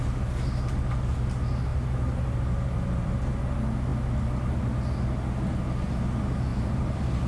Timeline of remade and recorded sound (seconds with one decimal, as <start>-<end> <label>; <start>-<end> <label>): 0.0-1.7 recorded; 1.7-3.4 remade; 3.4-6.5 recorded; 6.5-7.3 remade